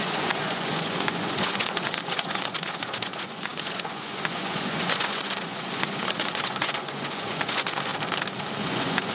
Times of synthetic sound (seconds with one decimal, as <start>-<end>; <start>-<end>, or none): 0.0-7.9; 8.6-9.1